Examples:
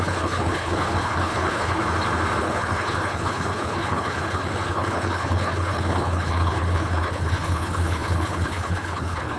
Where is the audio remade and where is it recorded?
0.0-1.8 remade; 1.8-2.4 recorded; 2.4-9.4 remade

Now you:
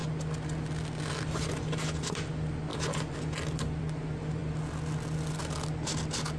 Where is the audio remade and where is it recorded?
0.0-6.4 recorded

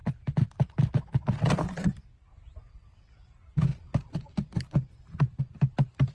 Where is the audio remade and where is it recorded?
0.0-6.1 recorded

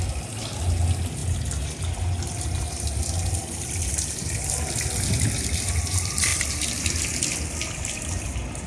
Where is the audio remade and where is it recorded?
0.0-8.7 recorded